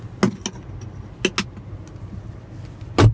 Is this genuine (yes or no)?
yes